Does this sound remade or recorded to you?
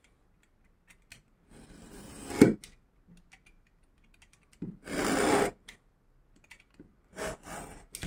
recorded